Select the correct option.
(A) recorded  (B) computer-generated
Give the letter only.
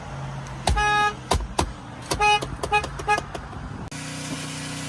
A